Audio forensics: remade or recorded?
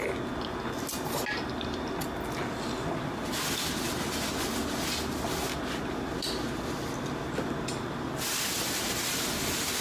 recorded